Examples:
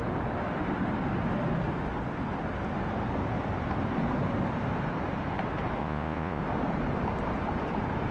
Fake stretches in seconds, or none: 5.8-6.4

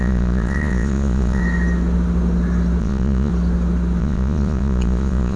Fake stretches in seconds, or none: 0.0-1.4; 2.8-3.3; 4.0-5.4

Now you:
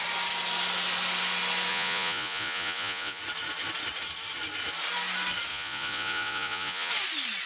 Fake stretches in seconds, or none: 1.7-3.2; 5.5-6.9

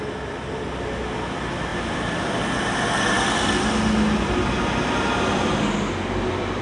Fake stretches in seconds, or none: none

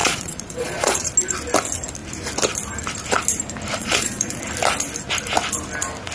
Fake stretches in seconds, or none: 0.0-1.1; 3.8-4.4